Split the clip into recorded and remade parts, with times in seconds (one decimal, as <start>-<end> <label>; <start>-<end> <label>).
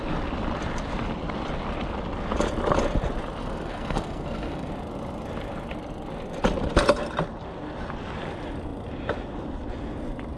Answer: 0.0-3.4 recorded; 3.4-4.7 remade; 4.7-10.4 recorded